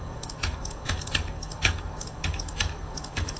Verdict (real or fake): fake